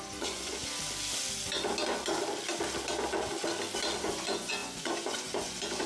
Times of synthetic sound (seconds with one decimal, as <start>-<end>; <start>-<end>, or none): 0.0-0.6; 4.0-5.9